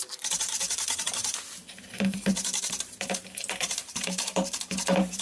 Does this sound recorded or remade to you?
remade